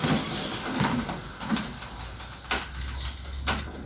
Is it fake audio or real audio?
real